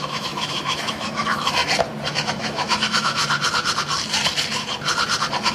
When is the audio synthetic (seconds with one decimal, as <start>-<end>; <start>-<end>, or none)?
0.0-1.6; 2.1-3.2